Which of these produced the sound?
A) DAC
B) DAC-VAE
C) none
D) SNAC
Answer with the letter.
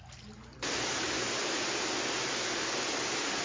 C